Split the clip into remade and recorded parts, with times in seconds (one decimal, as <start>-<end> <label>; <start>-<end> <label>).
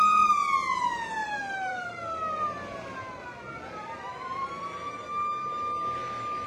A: 0.0-1.2 recorded; 1.2-4.5 remade; 4.5-6.5 recorded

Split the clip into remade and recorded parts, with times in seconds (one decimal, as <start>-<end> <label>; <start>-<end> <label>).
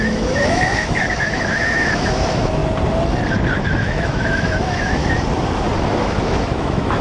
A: 0.0-2.6 remade; 2.6-3.6 recorded; 3.6-5.0 remade; 5.0-6.0 recorded; 6.0-7.0 remade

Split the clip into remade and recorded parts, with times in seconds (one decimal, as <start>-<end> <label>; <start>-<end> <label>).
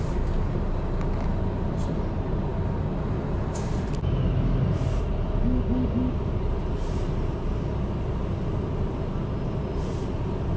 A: 0.0-10.6 recorded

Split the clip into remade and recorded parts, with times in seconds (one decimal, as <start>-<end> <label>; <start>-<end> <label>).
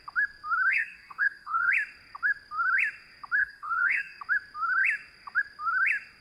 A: 0.0-0.7 recorded; 0.7-1.7 remade; 1.7-3.4 recorded; 3.4-4.2 remade; 4.2-6.2 recorded